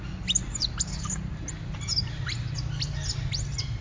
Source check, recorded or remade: recorded